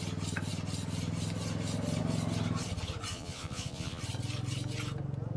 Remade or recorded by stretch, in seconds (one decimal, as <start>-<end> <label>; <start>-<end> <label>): 0.0-3.1 recorded; 3.1-4.0 remade; 4.0-5.4 recorded